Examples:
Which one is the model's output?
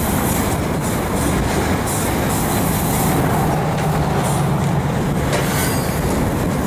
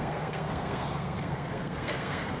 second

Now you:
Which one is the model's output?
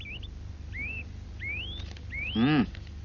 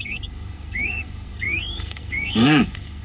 second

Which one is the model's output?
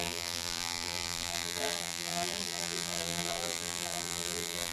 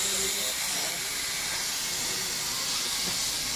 first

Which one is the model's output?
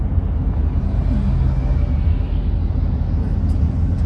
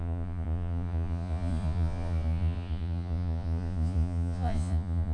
second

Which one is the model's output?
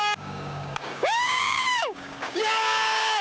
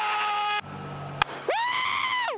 first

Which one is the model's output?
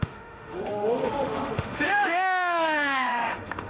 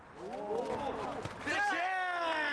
first